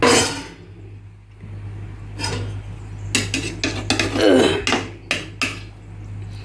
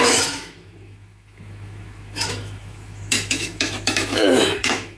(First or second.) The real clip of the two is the first